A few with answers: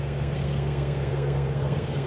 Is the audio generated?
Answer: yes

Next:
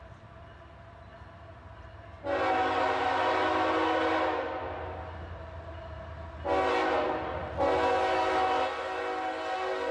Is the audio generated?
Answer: no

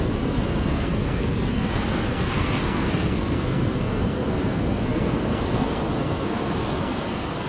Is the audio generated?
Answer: yes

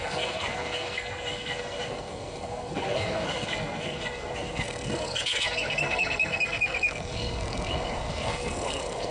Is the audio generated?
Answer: yes